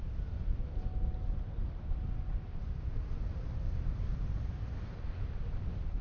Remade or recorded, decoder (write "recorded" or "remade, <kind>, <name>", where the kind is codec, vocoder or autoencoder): recorded